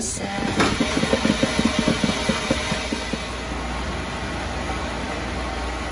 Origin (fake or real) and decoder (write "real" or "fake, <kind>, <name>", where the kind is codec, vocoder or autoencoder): real